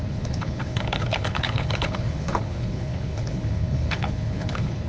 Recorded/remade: remade